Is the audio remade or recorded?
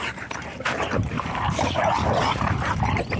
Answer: remade